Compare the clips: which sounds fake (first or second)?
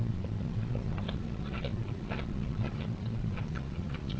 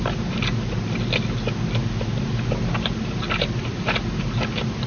first